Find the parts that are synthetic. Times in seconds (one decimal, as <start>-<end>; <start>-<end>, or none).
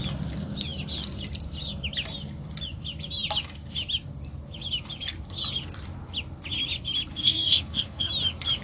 7.1-8.1